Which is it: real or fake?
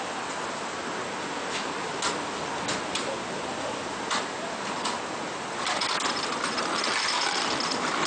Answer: real